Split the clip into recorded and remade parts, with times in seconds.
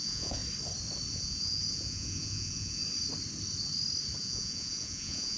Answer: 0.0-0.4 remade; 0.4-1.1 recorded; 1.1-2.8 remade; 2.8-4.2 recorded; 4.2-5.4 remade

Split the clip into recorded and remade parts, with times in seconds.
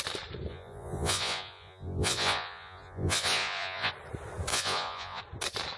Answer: 0.0-0.5 recorded; 0.5-3.9 remade; 3.9-4.5 recorded; 4.5-5.2 remade; 5.2-5.8 recorded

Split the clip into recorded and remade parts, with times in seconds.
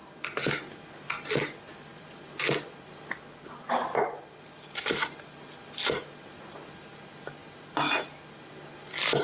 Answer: 0.0-9.2 recorded